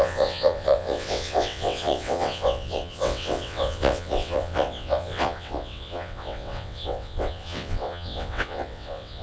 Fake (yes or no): yes